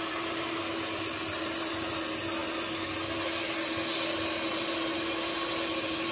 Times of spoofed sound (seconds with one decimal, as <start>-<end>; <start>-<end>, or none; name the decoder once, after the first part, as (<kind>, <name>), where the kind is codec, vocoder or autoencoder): none

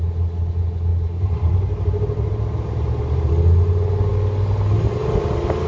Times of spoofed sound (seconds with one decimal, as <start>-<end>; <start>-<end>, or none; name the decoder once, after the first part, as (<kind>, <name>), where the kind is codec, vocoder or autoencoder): 0.9-3.3 (vocoder, BigVGAN v2)

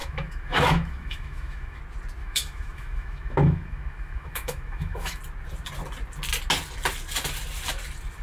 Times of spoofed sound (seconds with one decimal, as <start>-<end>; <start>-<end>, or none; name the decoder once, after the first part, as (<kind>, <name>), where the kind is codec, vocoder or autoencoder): 0.0-1.8 (autoencoder, DAC-VAE); 2.2-5.2